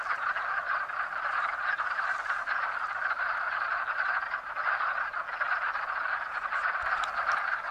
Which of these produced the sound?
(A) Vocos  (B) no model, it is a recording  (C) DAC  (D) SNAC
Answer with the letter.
B